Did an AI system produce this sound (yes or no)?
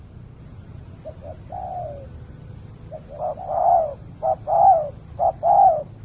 no